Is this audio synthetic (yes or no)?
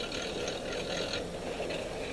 no